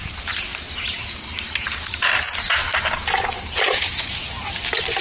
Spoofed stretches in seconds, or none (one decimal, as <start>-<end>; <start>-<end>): 0.5-1.7; 2.7-4.3